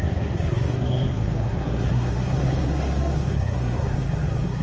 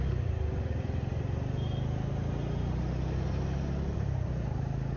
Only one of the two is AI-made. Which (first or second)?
first